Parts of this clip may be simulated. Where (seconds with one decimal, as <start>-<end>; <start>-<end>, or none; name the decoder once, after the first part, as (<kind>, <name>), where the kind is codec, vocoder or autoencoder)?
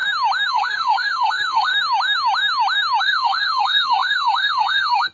0.5-1.7 (codec, SNAC); 3.0-5.1